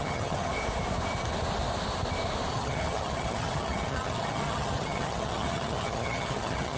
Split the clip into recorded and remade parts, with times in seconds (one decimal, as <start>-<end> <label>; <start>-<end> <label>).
0.0-0.5 remade; 0.5-2.5 recorded; 2.5-6.8 remade